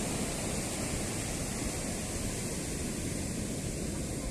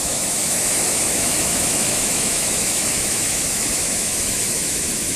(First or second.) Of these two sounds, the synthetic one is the second